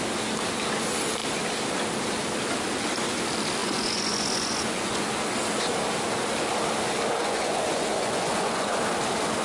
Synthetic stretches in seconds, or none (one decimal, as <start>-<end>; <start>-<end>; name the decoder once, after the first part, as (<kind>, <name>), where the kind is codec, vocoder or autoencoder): 3.6-5.1 (vocoder, Vocos); 7.2-8.8